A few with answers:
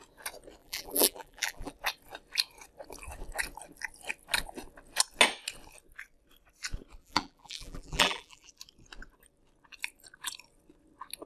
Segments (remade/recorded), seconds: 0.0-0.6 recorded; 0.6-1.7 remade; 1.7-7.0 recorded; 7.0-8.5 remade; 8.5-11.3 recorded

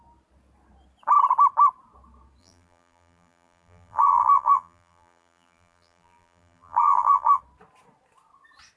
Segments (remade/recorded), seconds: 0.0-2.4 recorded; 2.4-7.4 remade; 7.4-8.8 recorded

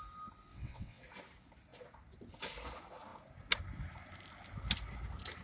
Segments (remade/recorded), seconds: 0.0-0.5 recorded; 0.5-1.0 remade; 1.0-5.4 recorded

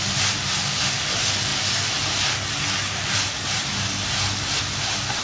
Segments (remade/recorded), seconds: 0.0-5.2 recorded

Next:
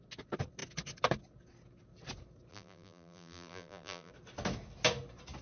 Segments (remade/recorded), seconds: 0.0-2.5 recorded; 2.5-4.1 remade; 4.1-5.4 recorded

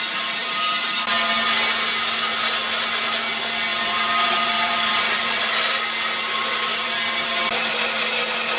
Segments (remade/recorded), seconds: 0.0-0.4 recorded; 0.4-1.1 remade; 1.1-3.7 recorded; 3.7-5.4 remade; 5.4-6.7 recorded; 6.7-7.4 remade; 7.4-8.6 recorded

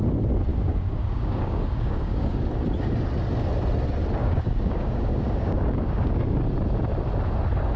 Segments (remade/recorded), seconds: 0.0-0.5 recorded; 0.5-2.5 remade; 2.5-4.2 recorded; 4.2-6.4 remade; 6.4-7.8 recorded